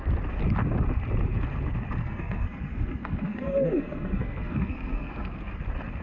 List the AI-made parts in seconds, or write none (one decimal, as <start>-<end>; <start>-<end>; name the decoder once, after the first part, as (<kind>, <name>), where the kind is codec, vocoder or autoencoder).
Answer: 2.0-5.6 (codec, SNAC)